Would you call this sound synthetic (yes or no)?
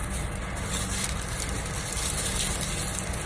no